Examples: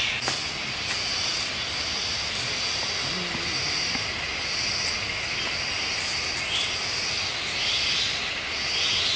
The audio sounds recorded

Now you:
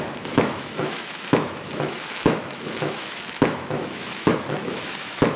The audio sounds remade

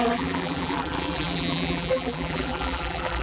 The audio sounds remade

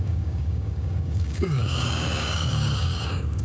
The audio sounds remade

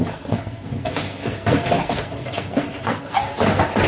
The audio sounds remade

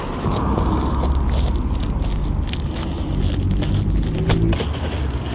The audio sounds recorded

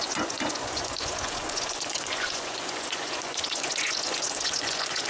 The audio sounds remade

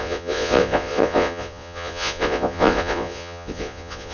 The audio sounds remade